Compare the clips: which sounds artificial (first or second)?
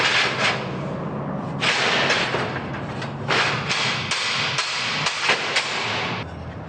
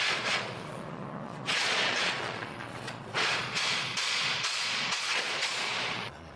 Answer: second